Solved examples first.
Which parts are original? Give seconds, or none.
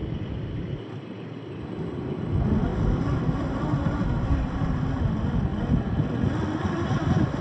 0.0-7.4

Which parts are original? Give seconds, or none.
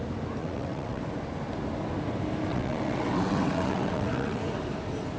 0.0-0.4; 1.0-2.5; 4.4-5.2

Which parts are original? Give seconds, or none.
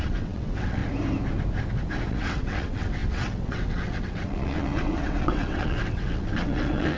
0.8-2.1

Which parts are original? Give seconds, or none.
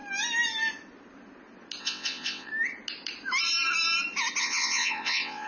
0.0-1.8; 2.5-4.4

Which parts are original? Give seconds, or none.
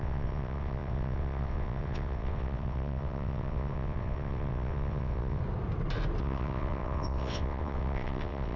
5.4-6.2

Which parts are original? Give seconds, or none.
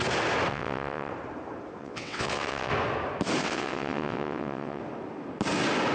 0.0-0.5; 1.1-1.8; 2.7-3.4; 4.8-5.9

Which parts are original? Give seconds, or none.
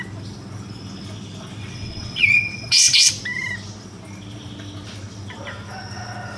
0.0-1.6; 3.1-6.4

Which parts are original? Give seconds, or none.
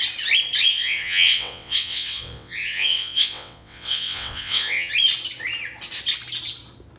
0.0-0.7; 4.9-7.0